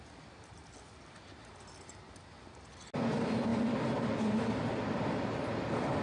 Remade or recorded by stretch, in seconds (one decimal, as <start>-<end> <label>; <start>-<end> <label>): 0.0-6.0 recorded